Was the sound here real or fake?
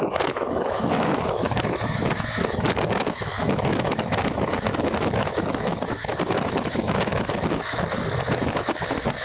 fake